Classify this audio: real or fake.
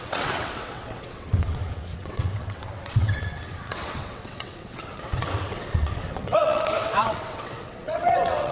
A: fake